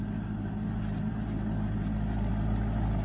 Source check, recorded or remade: recorded